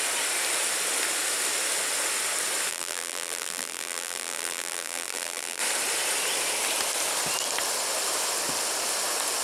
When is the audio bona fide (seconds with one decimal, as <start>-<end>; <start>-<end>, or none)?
0.0-2.7; 5.6-9.4